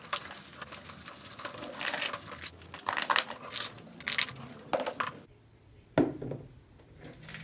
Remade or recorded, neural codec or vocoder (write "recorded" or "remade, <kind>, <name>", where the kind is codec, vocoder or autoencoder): recorded